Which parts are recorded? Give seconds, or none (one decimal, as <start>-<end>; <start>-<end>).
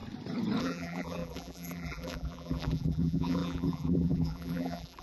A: 0.0-0.6